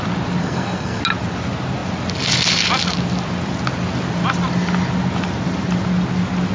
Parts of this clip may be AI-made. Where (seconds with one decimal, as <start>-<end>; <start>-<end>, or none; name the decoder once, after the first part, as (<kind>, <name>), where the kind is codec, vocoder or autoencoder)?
0.4-1.0 (codec, SNAC)